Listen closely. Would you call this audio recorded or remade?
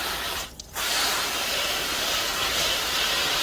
recorded